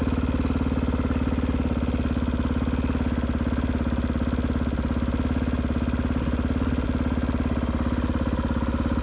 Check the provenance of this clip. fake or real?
real